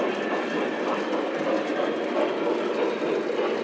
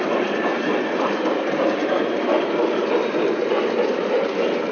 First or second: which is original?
first